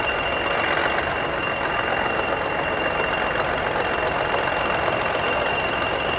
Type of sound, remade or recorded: recorded